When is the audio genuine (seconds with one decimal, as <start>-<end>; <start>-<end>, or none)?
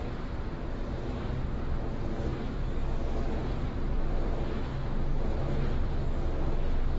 0.0-2.3; 2.9-3.4; 4.3-7.0